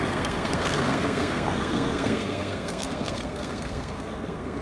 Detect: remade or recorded remade